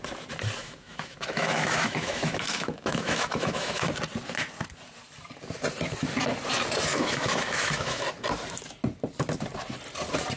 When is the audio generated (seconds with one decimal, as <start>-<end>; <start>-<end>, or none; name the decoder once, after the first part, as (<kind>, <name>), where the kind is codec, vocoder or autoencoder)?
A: 0.6-3.9 (autoencoder, DAC-VAE); 6.9-8.0